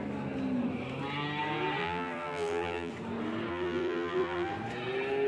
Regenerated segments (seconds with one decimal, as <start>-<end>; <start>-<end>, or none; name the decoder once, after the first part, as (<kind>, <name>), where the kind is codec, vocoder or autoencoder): 1.8-2.9 (vocoder, BigVGAN v2); 3.5-4.5